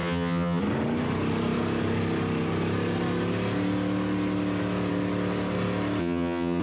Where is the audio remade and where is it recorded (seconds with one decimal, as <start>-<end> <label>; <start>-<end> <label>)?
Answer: 0.0-0.6 remade; 0.6-6.0 recorded; 6.0-6.6 remade